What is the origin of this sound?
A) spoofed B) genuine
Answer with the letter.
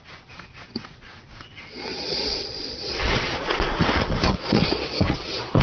A